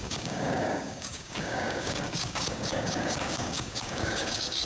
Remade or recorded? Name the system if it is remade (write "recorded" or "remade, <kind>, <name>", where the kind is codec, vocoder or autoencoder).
remade, codec, DAC